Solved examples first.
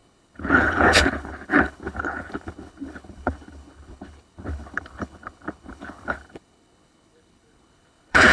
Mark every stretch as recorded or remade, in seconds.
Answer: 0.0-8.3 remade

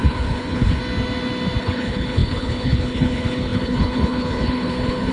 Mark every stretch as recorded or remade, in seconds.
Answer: 0.0-0.8 remade; 0.8-1.6 recorded; 1.6-5.1 remade

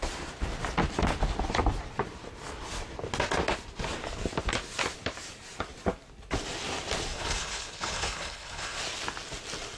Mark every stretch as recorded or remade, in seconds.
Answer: 0.0-7.1 recorded; 7.1-8.8 remade; 8.8-9.8 recorded

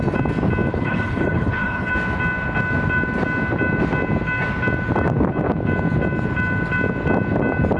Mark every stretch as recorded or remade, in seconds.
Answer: 0.0-0.7 recorded; 0.7-1.9 remade; 1.9-7.8 recorded

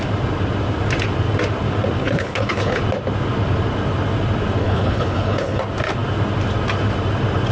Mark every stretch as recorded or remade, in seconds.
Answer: 0.0-2.0 recorded; 2.0-2.8 remade; 2.8-4.6 recorded; 4.6-5.6 remade; 5.6-7.5 recorded